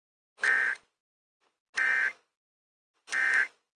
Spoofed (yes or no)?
no